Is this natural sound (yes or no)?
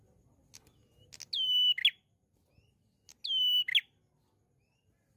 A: yes